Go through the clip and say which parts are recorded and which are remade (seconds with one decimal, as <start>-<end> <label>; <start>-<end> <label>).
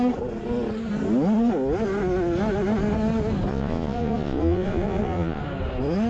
0.0-3.5 recorded; 3.5-5.4 remade; 5.4-6.1 recorded